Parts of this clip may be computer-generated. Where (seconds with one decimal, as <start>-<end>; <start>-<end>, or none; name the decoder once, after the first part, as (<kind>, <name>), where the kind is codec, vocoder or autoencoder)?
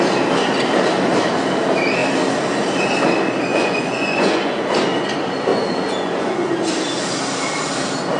3.5-4.6 (vocoder, Vocos); 5.5-6.5